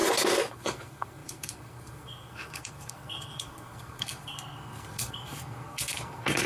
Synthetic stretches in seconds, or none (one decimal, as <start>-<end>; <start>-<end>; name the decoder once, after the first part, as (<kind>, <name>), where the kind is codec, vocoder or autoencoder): 0.5-6.5 (codec, SNAC)